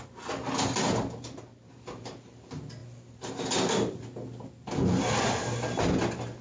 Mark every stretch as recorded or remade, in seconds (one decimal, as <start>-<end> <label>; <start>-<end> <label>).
0.0-6.4 recorded